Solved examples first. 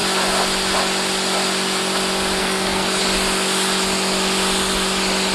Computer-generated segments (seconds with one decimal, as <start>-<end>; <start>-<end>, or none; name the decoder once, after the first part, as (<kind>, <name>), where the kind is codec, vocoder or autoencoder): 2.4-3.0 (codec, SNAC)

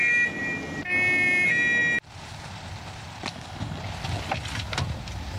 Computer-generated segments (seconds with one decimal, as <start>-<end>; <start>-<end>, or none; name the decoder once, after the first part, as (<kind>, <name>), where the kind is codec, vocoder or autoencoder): 3.3-3.8 (codec, DAC)

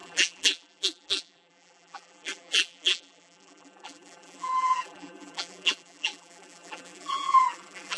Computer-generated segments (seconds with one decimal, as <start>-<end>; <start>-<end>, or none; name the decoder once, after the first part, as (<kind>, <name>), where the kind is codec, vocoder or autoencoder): 0.0-8.0 (vocoder, BigVGAN v2)

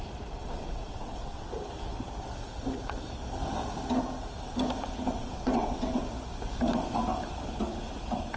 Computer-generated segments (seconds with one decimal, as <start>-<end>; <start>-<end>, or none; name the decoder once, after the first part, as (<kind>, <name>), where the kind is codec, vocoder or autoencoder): 0.4-1.5 (vocoder, WaveNeXt); 5.2-6.0

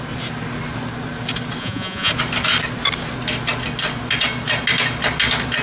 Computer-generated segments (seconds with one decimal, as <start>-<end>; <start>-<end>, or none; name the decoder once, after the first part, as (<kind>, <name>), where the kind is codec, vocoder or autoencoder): 1.6-2.1 (vocoder, Vocos)